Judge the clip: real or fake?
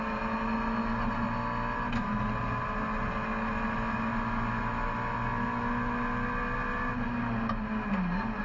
real